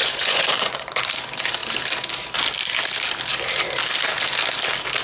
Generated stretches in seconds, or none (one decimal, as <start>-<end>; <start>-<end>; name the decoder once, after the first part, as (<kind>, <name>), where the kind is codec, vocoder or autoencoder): 0.0-1.0 (vocoder, Vocos)